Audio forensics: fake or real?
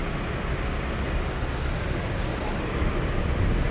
real